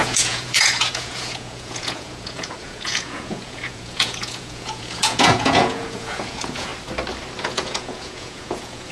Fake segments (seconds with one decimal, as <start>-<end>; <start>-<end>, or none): 0.0-6.7; 7.4-8.9